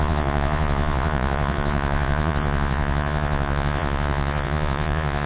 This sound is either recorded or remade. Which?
remade